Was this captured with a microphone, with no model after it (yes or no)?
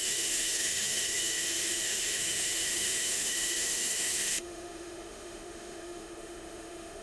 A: no